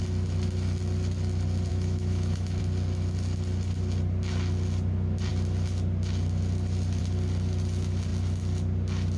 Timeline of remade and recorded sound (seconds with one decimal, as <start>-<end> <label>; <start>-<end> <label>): 0.0-1.7 recorded; 1.7-2.6 remade; 2.6-9.2 recorded